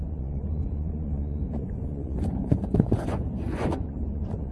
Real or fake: fake